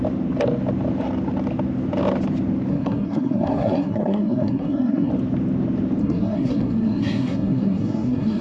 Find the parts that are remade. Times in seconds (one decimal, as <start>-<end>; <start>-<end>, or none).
2.7-5.1; 6.0-8.4